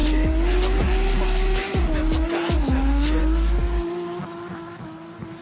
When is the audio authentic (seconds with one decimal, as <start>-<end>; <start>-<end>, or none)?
0.0-5.4